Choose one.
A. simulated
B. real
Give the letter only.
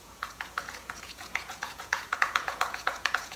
A